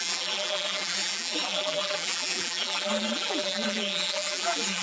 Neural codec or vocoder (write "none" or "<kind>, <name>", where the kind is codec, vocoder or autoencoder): vocoder, BigVGAN v2